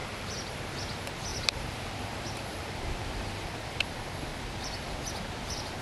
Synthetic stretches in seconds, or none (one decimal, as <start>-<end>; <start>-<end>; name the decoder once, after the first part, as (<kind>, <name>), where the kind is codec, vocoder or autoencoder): 0.0-0.5 (vocoder, BigVGAN v2); 1.3-3.8; 4.3-4.8